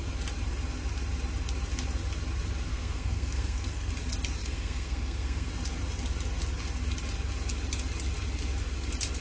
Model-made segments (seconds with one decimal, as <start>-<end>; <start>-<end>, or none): 2.7-3.9; 4.4-5.5